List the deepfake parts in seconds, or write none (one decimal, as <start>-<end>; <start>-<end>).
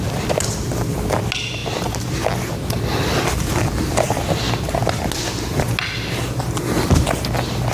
none